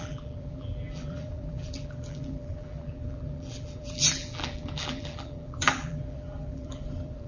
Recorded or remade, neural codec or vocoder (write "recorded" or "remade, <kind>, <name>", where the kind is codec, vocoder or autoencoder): remade, vocoder, BigVGAN v2